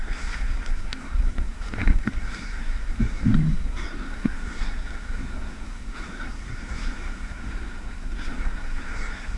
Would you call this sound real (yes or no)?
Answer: no